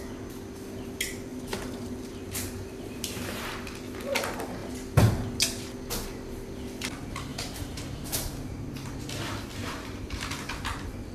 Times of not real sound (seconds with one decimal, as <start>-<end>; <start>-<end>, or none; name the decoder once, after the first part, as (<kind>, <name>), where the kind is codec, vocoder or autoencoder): 1.3-3.5 (vocoder, BigVGAN v2); 7.3-8.7; 9.6-10.3